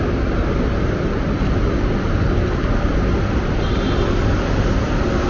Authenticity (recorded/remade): recorded